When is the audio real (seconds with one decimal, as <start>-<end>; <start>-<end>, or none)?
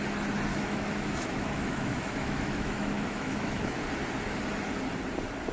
0.0-0.5; 3.8-5.5